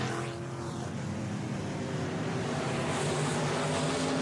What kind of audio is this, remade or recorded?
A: recorded